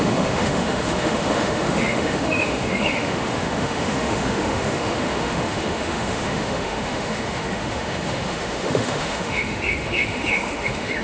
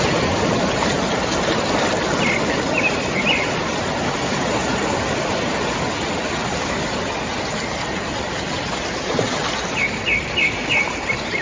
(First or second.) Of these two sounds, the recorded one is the second